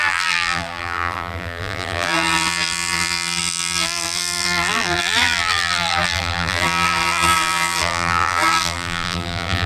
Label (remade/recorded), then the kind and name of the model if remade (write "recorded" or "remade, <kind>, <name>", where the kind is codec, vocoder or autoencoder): remade, vocoder, BigVGAN v2